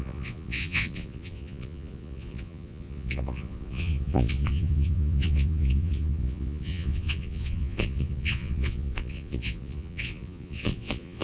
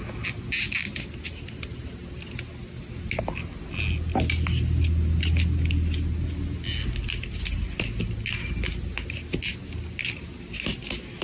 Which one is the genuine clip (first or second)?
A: second